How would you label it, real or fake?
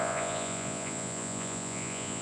fake